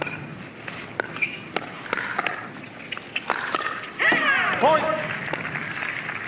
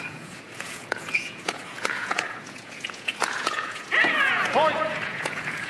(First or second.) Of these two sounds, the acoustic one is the first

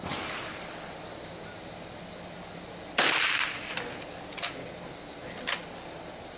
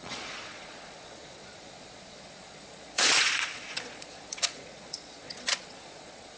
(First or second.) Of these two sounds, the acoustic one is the first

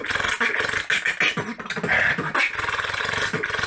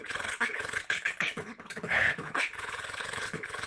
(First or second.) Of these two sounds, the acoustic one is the first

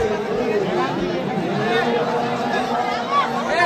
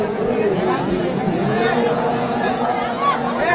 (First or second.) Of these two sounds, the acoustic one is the first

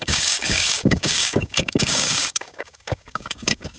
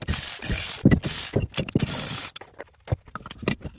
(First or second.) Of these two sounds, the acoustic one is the second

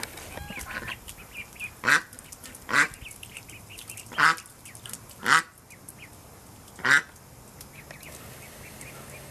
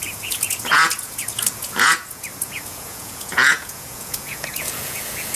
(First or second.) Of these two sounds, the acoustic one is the first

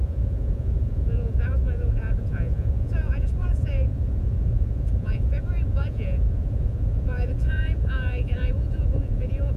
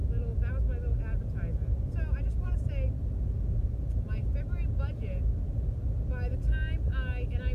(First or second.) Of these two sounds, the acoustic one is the second